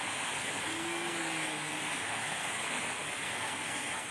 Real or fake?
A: fake